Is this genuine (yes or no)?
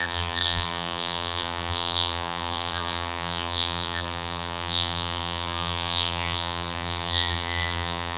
no